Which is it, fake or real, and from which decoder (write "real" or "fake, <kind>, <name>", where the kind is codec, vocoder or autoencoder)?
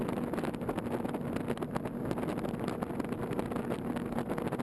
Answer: real